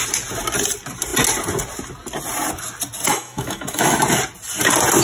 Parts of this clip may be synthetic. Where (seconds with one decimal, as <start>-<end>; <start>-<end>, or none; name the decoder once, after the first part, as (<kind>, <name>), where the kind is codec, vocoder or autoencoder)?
3.1-4.0 (autoencoder, DAC-VAE)